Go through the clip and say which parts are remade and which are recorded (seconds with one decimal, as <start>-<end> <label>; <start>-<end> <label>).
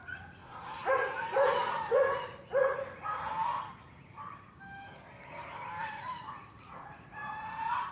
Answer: 0.0-3.3 remade; 3.3-5.8 recorded; 5.8-7.9 remade